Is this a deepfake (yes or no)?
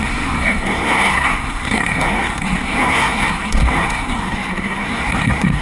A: yes